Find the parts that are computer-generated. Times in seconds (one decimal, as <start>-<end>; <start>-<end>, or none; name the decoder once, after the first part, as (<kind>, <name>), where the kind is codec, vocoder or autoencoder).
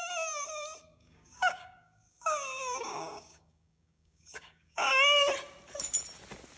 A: 0.9-4.9 (codec, DAC)